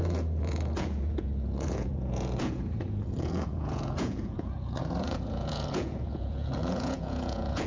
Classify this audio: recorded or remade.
remade